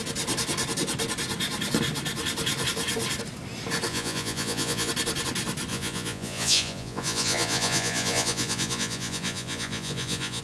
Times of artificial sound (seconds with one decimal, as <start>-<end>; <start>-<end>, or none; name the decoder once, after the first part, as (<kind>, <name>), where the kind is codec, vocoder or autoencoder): 3.9-4.9 (vocoder, Vocos); 5.7-10.4

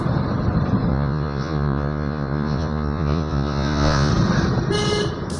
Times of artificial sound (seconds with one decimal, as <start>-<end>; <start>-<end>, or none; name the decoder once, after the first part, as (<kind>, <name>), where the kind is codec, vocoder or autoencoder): 0.9-4.1 (vocoder, Vocos)

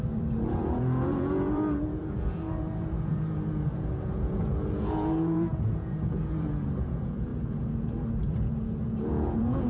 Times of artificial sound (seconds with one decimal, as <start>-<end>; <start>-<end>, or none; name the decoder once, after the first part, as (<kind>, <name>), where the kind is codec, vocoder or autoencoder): 0.0-9.7 (vocoder, Vocos)

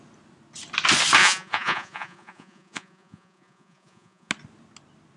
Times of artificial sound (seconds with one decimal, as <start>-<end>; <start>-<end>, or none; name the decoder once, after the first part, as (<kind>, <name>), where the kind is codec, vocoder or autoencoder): 1.2-4.3 (vocoder, Vocos)

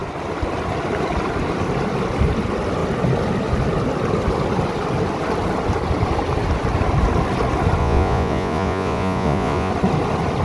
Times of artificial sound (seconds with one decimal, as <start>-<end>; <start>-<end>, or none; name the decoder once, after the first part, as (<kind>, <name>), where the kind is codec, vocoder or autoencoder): 7.8-9.7 (vocoder, Vocos)

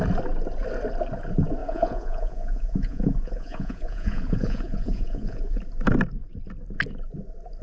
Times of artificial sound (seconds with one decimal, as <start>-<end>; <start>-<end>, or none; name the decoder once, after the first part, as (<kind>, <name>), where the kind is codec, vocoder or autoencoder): 1.6-5.6 (vocoder, Vocos)

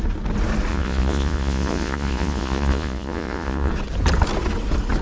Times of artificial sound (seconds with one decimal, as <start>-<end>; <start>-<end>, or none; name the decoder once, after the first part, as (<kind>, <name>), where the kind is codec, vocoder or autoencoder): 0.7-3.7 (vocoder, Vocos)

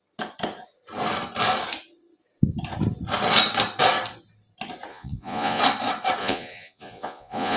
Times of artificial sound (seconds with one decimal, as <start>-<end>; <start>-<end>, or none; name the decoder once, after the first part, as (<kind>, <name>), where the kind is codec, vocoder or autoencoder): 4.9-5.6 (vocoder, Vocos); 6.2-7.6